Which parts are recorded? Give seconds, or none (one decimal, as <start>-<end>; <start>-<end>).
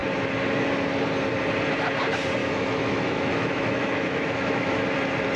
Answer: 0.0-2.4; 4.7-5.4